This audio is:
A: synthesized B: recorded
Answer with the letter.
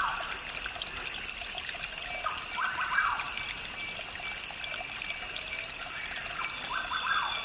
B